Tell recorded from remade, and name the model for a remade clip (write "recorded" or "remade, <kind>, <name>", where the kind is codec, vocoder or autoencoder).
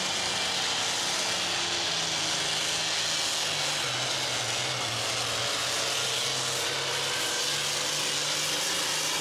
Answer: recorded